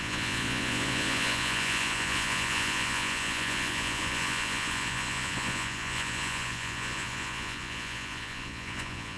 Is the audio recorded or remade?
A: remade